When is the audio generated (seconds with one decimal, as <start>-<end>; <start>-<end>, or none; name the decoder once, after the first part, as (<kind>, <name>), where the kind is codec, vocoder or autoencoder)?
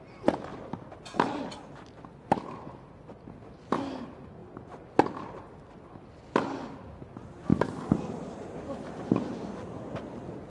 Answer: 7.5-8.8 (vocoder, BigVGAN v2)